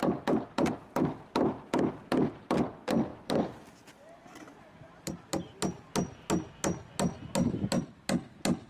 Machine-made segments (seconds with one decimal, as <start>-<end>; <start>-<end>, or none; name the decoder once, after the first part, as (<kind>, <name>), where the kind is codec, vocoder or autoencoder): 3.1-5.3 (vocoder, BigVGAN v2)